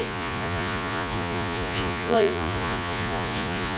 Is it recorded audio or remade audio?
remade